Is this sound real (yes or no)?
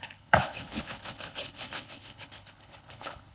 no